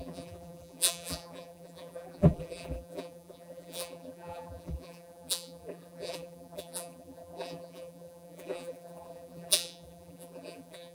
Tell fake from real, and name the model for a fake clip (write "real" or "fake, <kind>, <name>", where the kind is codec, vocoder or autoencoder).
fake, vocoder, BigVGAN v2